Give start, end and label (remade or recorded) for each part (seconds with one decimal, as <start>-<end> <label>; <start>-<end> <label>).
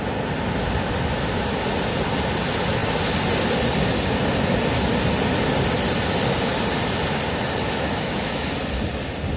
0.0-7.6 recorded; 7.6-8.5 remade; 8.5-9.4 recorded